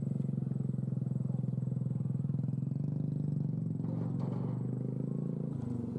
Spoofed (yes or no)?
no